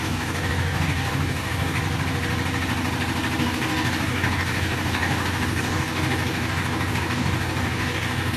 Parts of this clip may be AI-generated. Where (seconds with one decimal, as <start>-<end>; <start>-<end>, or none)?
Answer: 0.0-1.8; 3.4-8.4